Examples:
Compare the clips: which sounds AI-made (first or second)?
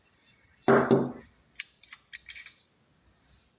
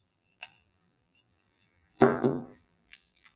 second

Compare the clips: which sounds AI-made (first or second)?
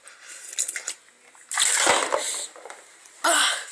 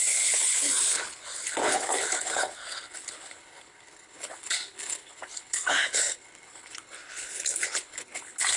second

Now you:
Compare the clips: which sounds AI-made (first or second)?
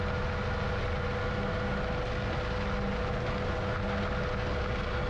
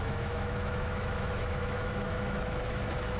second